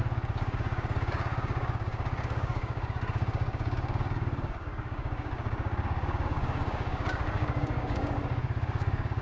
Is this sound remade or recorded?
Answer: remade